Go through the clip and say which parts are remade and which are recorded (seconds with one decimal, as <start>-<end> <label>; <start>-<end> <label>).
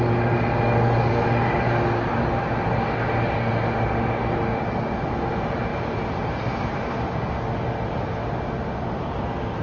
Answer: 0.0-5.7 recorded; 5.7-7.3 remade; 7.3-9.6 recorded